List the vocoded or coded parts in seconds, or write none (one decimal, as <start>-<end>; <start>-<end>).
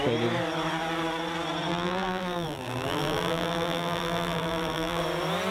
1.7-5.0